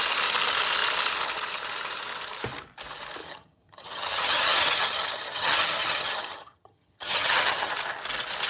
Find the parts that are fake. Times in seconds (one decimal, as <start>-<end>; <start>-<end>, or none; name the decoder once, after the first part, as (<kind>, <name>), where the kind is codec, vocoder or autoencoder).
3.2-7.7 (vocoder, HiFi-GAN)